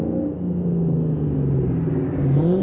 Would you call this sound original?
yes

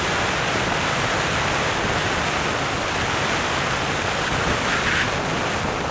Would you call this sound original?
yes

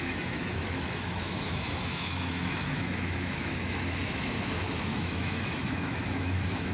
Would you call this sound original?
no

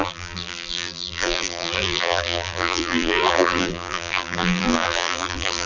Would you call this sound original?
no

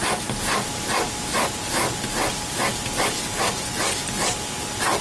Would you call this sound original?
yes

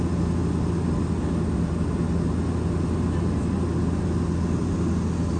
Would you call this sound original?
yes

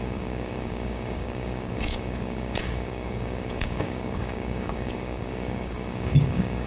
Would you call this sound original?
no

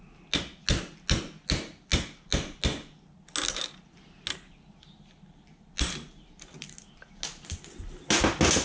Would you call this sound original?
yes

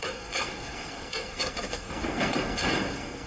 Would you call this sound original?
no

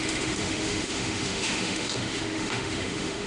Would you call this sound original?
no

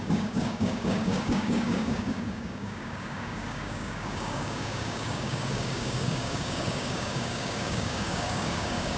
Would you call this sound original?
no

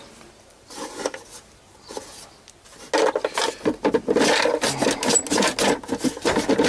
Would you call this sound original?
yes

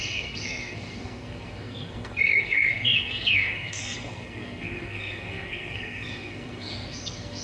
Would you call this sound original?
no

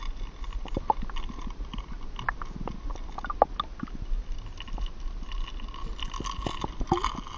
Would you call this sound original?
yes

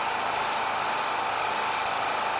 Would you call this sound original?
yes